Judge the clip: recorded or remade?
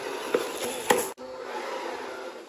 recorded